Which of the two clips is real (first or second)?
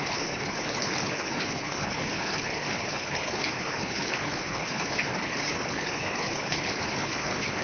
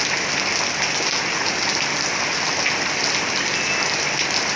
second